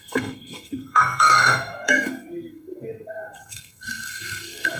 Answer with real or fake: fake